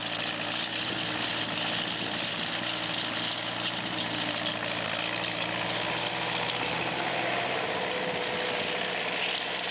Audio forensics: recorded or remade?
recorded